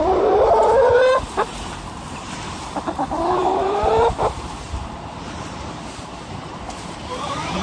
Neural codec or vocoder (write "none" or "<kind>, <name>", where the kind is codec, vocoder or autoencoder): vocoder, BigVGAN v2